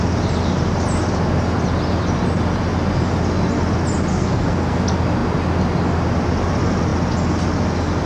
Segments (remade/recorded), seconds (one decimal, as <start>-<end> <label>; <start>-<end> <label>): 0.0-4.1 recorded; 4.1-4.8 remade; 4.8-8.1 recorded